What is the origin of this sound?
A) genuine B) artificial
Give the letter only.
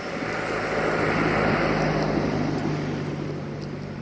A